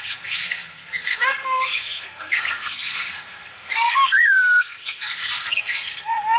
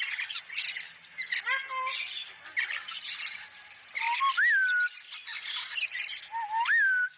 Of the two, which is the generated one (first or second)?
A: first